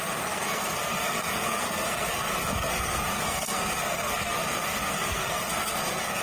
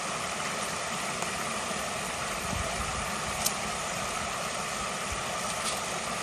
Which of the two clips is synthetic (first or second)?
first